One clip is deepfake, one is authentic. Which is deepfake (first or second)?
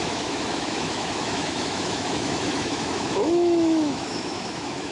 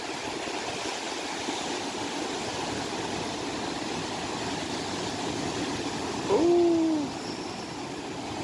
first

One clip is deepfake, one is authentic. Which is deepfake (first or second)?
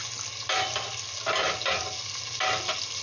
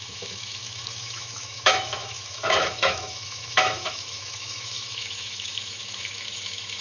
second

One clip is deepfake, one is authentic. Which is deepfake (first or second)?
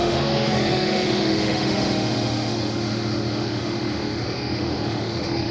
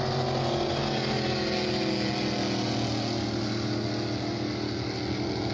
first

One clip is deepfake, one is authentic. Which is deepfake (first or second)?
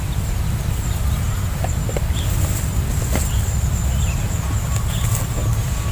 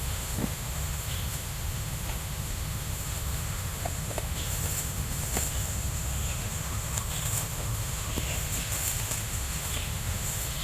second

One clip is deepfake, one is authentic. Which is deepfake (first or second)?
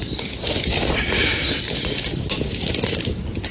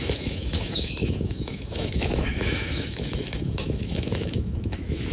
second